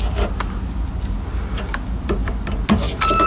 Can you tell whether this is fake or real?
real